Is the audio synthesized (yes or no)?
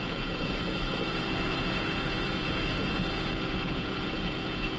yes